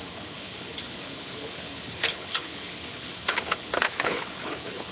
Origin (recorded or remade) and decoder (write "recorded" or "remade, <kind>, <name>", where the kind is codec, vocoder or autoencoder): remade, codec, HILCodec